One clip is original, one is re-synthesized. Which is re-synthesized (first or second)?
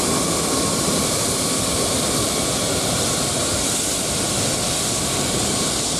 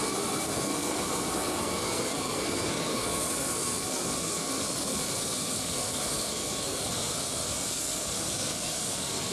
second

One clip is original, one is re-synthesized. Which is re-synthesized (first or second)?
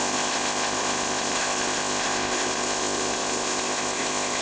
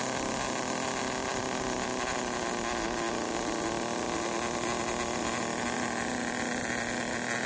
first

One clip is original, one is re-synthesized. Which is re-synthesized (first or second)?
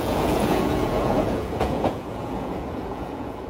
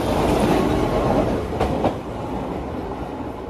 first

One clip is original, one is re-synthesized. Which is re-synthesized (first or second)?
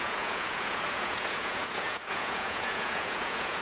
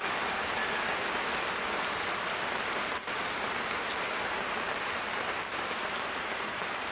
first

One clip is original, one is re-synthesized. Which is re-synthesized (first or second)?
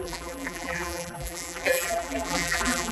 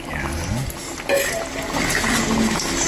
first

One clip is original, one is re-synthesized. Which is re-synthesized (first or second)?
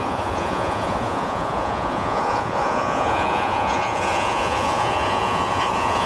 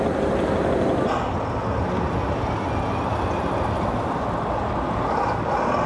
first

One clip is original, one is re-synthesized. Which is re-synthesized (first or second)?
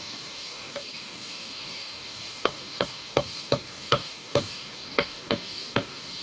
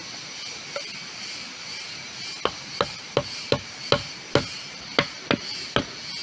first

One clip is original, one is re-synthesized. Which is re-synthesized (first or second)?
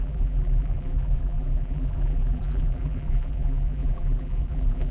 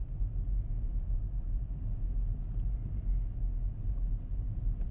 first